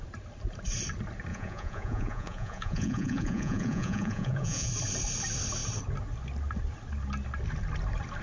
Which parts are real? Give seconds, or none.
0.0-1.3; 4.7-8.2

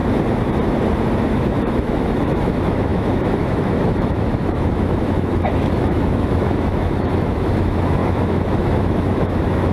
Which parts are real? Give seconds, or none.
0.0-1.3

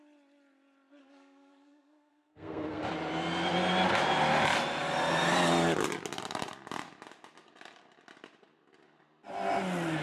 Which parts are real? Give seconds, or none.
0.0-1.0; 2.8-10.0

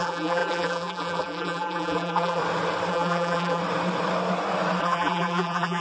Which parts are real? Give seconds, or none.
2.4-2.9; 3.6-4.8

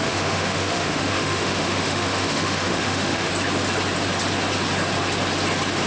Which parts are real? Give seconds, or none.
3.3-5.9